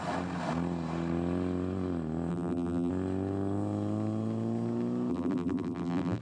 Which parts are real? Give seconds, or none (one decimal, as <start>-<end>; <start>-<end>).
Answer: 0.0-2.3; 2.9-5.1